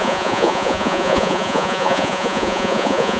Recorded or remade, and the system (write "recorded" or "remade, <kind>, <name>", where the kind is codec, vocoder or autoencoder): remade, vocoder, Vocos